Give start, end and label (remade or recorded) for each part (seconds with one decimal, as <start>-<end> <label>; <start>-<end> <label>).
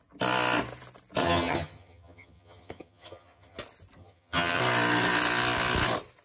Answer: 0.0-1.2 recorded; 1.2-3.6 remade; 3.6-4.0 recorded; 4.0-4.6 remade; 4.6-6.2 recorded